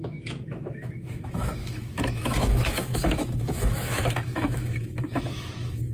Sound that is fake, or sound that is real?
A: fake